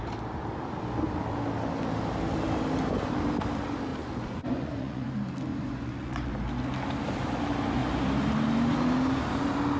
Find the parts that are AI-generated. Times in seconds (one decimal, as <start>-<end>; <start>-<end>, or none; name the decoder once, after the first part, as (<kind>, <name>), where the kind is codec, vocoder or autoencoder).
3.9-5.1 (vocoder, Vocos); 5.5-6.3